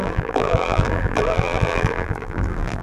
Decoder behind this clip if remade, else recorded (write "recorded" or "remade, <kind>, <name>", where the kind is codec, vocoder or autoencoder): remade, vocoder, BigVGAN v2